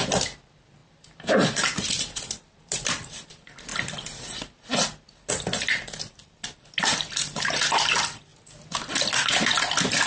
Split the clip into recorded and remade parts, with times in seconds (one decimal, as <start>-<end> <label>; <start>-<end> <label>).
0.0-3.7 remade; 3.7-5.3 recorded; 5.3-8.3 remade; 8.3-10.1 recorded